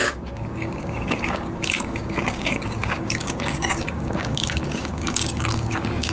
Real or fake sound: fake